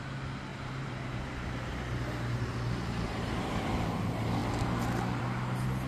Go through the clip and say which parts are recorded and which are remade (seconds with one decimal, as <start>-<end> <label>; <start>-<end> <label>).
0.0-0.5 recorded; 0.5-4.0 remade; 4.0-5.9 recorded